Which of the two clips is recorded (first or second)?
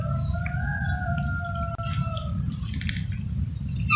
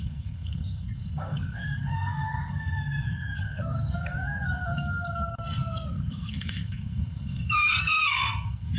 first